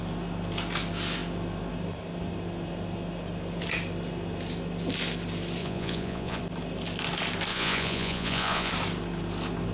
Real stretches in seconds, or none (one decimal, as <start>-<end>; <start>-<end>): 0.0-5.6; 6.4-7.5; 8.7-9.7